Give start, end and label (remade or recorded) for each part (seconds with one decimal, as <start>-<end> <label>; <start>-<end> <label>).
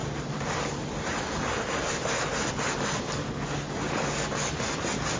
0.0-5.2 recorded